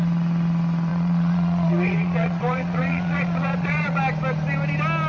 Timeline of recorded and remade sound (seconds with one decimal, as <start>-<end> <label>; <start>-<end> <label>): 0.0-0.9 recorded; 0.9-4.0 remade; 4.0-5.1 recorded